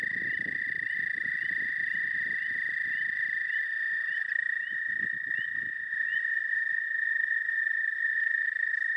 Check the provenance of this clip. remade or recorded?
recorded